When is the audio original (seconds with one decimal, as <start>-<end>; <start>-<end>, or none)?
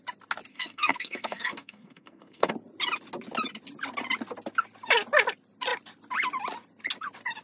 0.0-0.5; 2.5-7.4